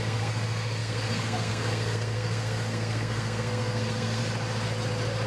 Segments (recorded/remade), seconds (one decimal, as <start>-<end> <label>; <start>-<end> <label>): 0.0-4.2 remade; 4.2-5.3 recorded